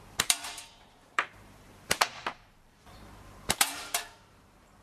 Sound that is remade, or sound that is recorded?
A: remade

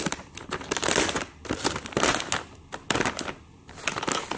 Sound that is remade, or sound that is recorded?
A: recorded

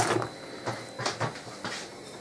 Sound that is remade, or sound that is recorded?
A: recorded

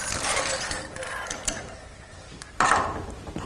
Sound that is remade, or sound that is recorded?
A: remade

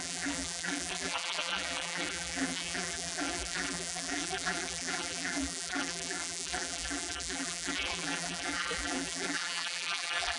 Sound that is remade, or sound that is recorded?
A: remade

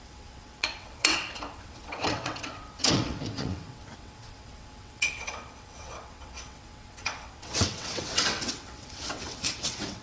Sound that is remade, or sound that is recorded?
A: remade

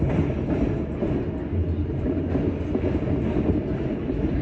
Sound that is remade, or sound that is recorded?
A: recorded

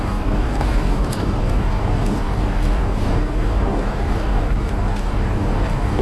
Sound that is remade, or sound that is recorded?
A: remade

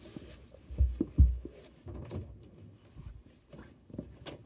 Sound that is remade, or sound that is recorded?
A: recorded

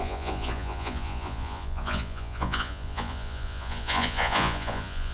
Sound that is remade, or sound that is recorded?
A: remade